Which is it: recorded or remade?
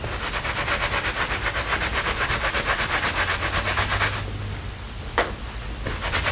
recorded